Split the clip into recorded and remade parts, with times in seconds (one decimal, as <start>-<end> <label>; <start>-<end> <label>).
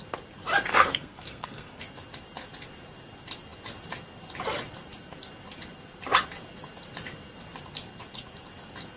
0.0-0.7 recorded; 0.7-1.8 remade; 1.8-9.0 recorded